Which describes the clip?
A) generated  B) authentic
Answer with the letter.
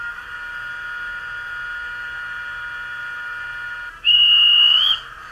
B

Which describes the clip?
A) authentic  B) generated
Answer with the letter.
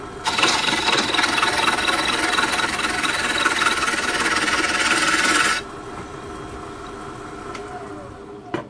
A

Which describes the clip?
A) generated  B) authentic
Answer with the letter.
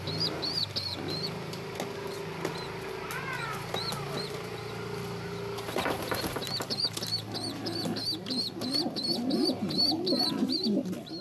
B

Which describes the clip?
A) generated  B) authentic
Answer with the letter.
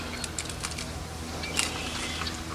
B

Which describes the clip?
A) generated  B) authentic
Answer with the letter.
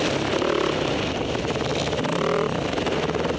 A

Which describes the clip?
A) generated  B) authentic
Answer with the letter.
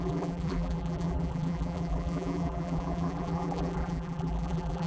A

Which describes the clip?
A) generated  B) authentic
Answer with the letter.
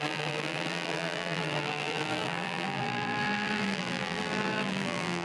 A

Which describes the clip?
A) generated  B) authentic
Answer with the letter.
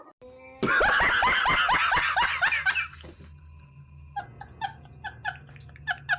B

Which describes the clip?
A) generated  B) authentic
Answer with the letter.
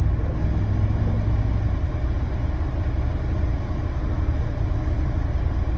B